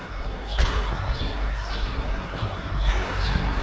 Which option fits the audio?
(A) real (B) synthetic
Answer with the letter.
B